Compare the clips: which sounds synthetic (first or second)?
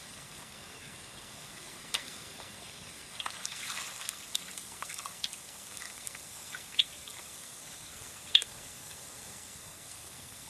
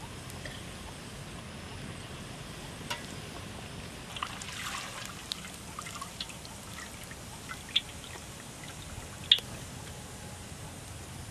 first